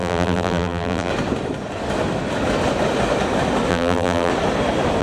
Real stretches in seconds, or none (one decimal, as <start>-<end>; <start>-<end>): 1.1-3.7; 4.3-5.0